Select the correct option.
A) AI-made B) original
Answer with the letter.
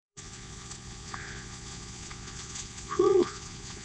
A